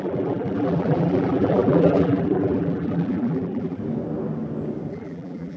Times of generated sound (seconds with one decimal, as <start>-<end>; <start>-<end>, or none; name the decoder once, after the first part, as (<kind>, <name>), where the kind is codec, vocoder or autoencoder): 0.0-3.8 (vocoder, BigVGAN v2); 4.9-5.6